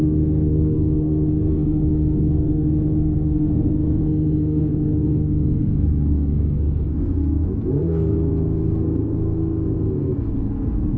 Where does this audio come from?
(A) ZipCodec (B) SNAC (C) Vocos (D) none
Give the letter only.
B